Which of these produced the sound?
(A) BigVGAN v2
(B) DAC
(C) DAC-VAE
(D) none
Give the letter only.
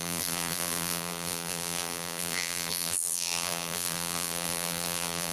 A